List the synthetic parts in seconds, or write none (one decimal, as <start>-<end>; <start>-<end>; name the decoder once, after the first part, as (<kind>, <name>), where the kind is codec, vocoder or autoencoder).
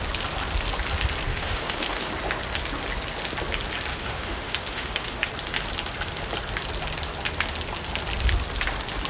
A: 1.3-2.1 (autoencoder, DAC-VAE); 3.9-5.3